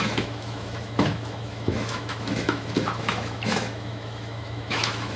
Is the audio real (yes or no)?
no